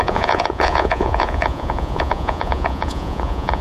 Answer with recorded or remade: remade